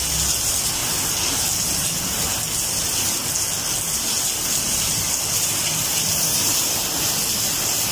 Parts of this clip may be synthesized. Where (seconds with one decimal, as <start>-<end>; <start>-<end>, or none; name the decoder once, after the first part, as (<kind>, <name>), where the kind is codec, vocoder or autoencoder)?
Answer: none